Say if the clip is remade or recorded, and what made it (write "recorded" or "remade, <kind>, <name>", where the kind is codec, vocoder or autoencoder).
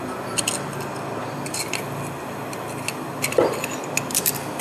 recorded